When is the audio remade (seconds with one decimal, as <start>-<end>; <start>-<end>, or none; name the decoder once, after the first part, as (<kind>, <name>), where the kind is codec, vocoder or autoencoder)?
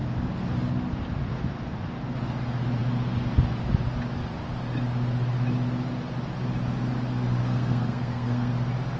7.4-8.5 (codec, SNAC)